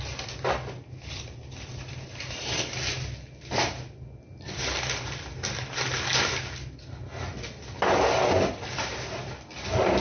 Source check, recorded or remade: recorded